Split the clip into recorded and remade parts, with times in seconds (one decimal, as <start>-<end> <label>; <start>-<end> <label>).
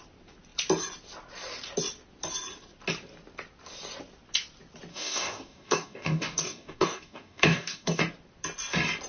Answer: 0.0-4.9 recorded; 4.9-8.0 remade; 8.0-9.1 recorded